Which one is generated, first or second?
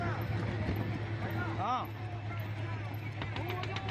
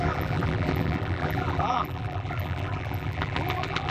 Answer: second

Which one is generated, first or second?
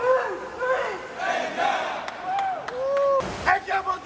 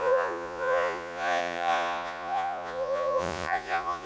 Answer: second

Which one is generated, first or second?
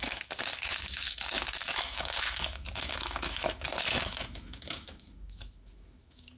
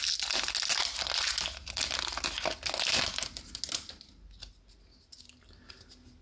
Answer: first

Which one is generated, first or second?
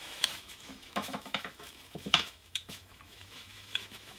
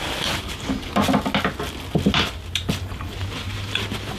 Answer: first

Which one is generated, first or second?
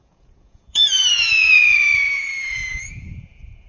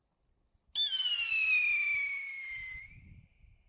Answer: first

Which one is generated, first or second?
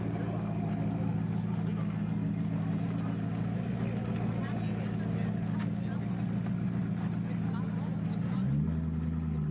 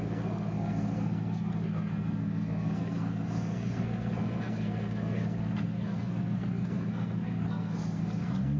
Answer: second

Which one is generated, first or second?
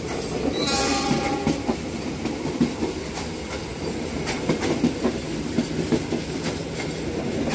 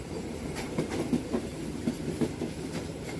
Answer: second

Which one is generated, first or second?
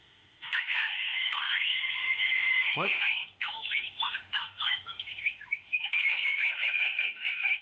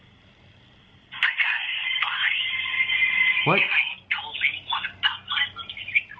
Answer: first